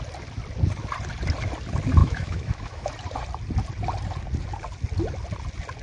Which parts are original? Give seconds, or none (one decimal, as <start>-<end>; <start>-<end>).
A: 0.0-2.0; 2.9-5.8